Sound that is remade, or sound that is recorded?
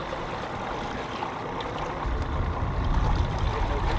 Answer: recorded